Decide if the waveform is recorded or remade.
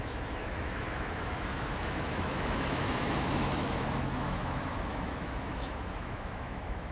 remade